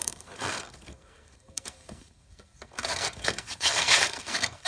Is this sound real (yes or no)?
no